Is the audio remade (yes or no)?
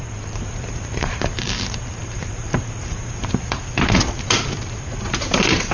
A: yes